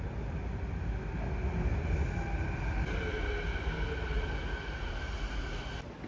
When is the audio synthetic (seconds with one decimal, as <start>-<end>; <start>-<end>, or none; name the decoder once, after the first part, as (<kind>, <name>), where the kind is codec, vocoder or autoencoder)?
none